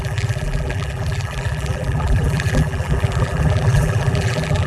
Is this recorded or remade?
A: remade